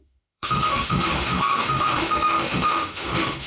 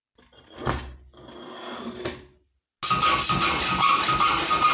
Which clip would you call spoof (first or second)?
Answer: first